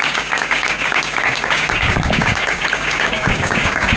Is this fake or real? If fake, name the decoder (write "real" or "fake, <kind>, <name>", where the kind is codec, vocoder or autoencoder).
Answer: fake, codec, DAC